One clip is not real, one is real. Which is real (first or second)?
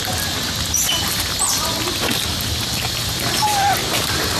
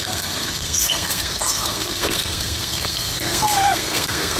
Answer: first